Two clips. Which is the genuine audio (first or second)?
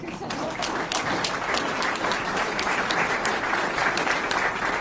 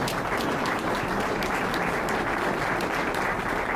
second